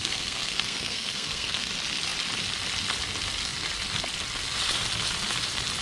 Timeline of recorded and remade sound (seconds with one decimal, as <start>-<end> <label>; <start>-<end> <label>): 0.0-1.7 remade; 1.7-5.8 recorded